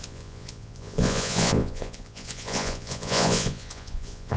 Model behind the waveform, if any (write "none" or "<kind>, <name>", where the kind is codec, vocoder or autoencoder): vocoder, Vocos